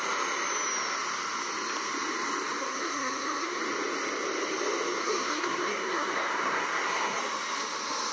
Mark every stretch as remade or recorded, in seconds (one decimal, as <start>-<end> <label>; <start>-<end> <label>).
0.0-2.6 recorded; 2.6-3.6 remade; 3.6-5.0 recorded; 5.0-7.2 remade; 7.2-8.1 recorded